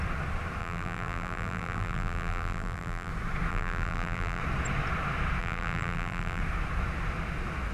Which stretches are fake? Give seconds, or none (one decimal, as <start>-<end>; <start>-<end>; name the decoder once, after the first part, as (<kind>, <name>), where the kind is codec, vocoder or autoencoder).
0.6-3.1 (vocoder, BigVGAN v2); 3.5-4.4; 5.4-6.4